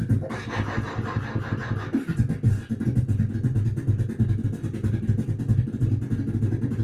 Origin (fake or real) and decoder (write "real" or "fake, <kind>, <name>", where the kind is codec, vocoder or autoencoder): real